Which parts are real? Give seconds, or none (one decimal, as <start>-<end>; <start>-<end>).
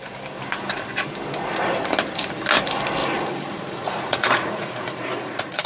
0.0-3.0